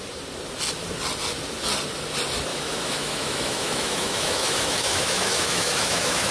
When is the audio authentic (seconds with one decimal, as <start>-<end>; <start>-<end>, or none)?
0.0-2.5